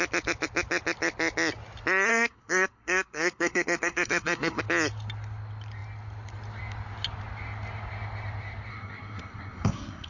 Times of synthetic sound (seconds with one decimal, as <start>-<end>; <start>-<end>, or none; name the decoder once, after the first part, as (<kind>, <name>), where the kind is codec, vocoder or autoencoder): 2.1-4.6 (codec, SNAC); 8.7-10.1